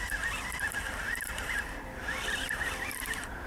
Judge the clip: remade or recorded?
recorded